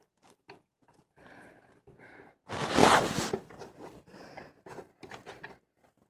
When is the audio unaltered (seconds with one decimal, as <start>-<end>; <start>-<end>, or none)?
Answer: 0.0-2.8; 4.4-6.1